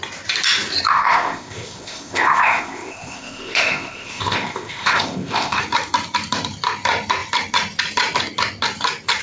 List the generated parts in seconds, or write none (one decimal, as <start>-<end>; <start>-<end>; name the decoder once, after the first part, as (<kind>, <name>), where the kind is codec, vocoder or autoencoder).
0.9-5.6 (codec, ZipCodec)